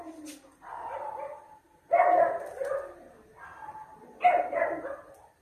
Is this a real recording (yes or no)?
yes